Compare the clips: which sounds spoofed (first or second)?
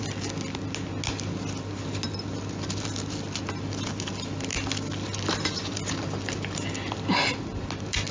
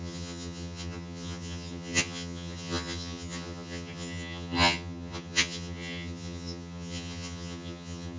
second